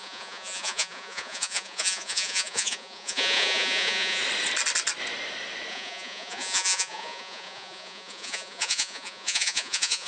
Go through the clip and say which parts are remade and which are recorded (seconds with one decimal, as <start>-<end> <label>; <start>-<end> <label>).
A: 0.0-4.2 remade; 4.2-5.7 recorded; 5.7-10.1 remade